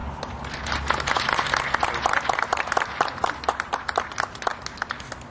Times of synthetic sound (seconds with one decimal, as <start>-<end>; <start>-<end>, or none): 3.2-4.5

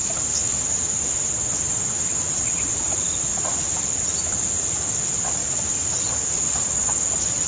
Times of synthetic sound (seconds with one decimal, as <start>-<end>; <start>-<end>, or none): 3.3-4.9

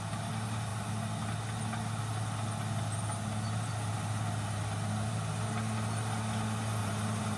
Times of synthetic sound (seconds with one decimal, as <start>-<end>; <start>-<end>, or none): 6.8-7.4

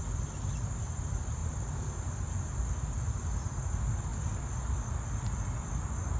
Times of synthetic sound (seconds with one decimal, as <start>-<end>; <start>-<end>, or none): 1.4-2.7; 4.1-4.7